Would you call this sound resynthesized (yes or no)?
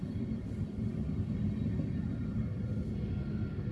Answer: no